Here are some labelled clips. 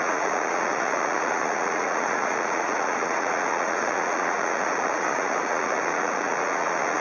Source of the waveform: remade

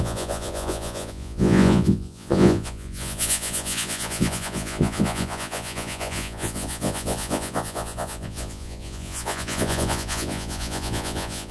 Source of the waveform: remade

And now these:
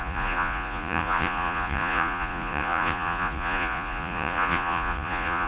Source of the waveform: remade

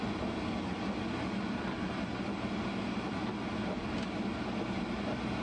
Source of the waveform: recorded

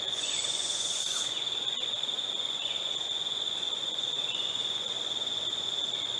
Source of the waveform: remade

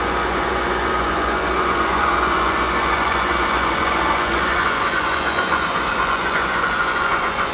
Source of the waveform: remade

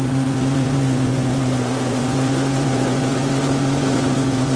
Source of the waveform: remade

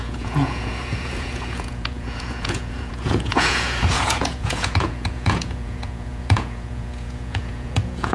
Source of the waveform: remade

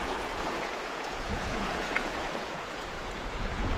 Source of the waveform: remade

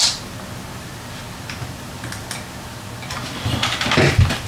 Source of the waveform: recorded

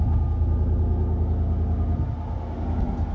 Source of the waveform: recorded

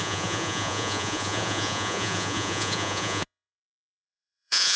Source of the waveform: remade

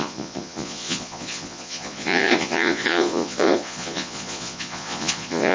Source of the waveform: remade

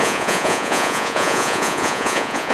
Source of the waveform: remade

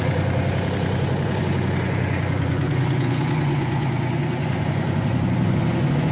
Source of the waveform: remade